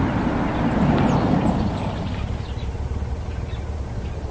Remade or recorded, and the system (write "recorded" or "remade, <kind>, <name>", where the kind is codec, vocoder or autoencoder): recorded